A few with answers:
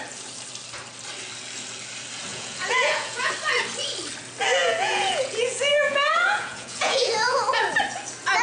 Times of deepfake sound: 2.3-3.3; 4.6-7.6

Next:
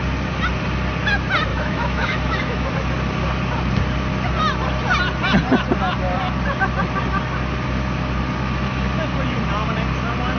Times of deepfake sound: 1.5-2.7

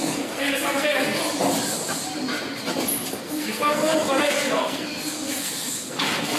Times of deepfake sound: 0.0-1.2; 3.1-6.4

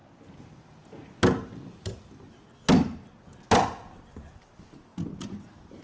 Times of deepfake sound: none